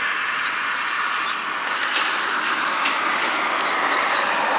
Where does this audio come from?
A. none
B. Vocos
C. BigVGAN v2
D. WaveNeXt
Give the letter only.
A